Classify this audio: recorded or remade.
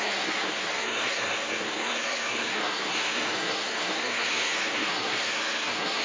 remade